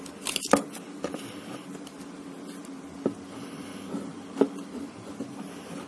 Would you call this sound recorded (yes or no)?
no